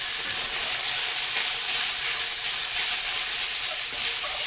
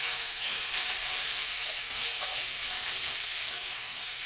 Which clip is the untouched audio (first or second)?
first